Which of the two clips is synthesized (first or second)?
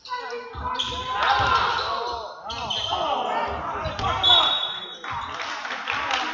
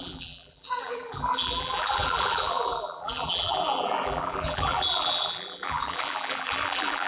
second